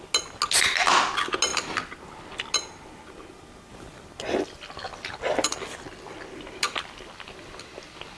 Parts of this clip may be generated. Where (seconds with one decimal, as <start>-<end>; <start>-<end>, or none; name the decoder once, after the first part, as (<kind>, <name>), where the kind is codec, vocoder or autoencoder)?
none